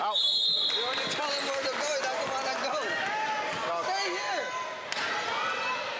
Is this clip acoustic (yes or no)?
yes